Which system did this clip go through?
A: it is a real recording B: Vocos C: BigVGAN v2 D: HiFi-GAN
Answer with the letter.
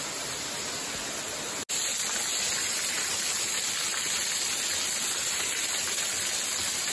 A